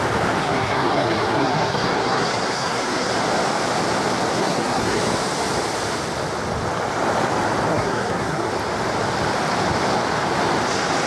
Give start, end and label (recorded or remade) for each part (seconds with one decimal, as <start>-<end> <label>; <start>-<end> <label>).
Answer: 0.0-0.4 recorded; 0.4-3.1 remade; 3.1-4.3 recorded; 4.3-5.0 remade; 5.0-7.7 recorded; 7.7-8.5 remade; 8.5-11.1 recorded